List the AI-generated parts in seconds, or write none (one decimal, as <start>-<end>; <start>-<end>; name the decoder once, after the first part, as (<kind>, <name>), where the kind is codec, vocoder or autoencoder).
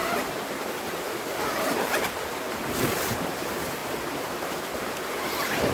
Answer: 3.4-5.7 (vocoder, BigVGAN v2)